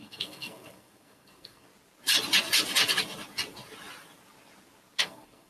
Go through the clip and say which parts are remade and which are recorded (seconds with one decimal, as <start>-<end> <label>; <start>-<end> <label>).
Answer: 0.0-1.7 remade; 1.7-5.0 recorded; 5.0-5.5 remade

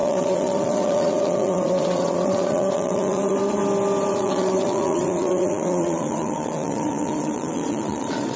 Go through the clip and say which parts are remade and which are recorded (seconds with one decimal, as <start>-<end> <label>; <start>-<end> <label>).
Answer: 0.0-3.6 remade; 3.6-4.1 recorded; 4.1-8.4 remade

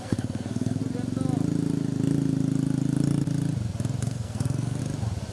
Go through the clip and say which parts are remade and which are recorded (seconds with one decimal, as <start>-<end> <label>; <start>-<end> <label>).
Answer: 0.0-0.8 remade; 0.8-4.0 recorded; 4.0-4.8 remade; 4.8-5.3 recorded

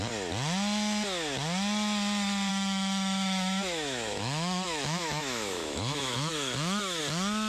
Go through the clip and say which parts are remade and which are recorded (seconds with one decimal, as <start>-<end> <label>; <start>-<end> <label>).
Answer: 0.0-2.5 recorded; 2.5-7.0 remade; 7.0-7.5 recorded

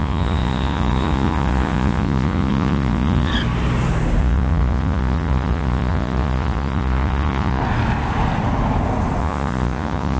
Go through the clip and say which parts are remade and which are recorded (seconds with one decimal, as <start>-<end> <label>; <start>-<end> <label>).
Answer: 0.0-3.3 remade; 3.3-4.2 recorded; 4.2-7.6 remade; 7.6-9.2 recorded; 9.2-10.2 remade

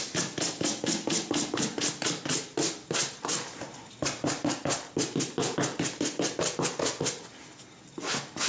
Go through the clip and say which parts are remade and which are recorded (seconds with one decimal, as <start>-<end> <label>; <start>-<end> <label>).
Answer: 0.0-8.5 recorded

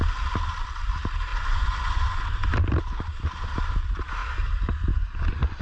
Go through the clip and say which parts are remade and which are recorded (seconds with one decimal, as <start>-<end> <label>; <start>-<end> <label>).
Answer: 0.0-1.3 recorded; 1.3-2.5 remade; 2.5-5.6 recorded

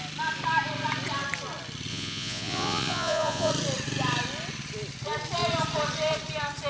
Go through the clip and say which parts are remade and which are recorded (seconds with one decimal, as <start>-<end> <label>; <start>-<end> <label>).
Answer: 0.0-1.9 recorded; 1.9-3.5 remade; 3.5-6.7 recorded